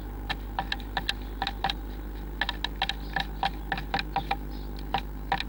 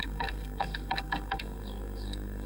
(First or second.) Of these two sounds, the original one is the first